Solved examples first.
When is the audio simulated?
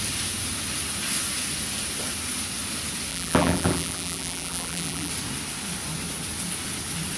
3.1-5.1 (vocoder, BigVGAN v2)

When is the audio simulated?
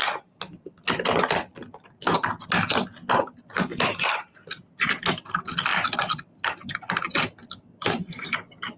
none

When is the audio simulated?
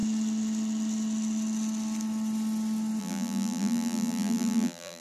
3.0-5.0 (vocoder, BigVGAN v2)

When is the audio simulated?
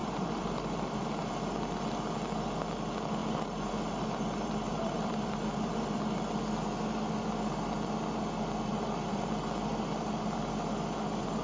0.0-1.3 (vocoder, BigVGAN v2); 3.2-6.0; 8.7-9.3